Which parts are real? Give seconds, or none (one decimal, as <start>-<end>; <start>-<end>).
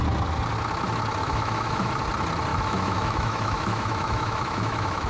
0.0-1.2; 1.9-2.5